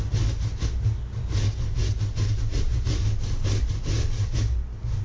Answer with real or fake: real